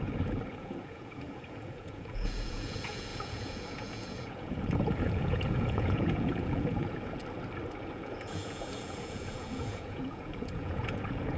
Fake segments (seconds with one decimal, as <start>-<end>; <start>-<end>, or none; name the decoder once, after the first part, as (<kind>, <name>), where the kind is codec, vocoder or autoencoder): 0.0-7.2 (vocoder, Vocos); 7.8-11.4